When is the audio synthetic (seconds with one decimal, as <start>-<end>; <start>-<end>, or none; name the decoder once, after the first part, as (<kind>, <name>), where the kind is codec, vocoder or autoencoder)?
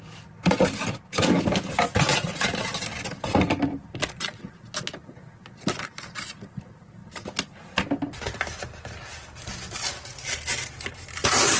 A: none